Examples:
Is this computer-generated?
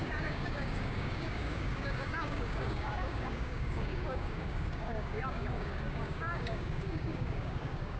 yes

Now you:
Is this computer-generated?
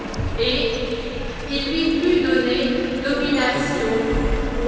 no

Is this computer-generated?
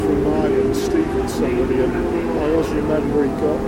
no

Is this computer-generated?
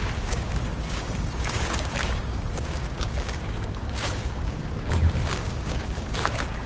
yes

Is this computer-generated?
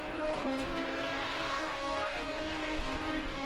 yes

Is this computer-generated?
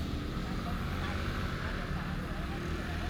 no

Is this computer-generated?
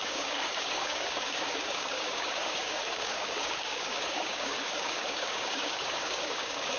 yes